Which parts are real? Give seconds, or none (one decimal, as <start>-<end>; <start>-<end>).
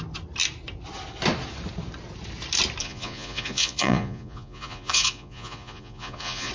0.0-2.8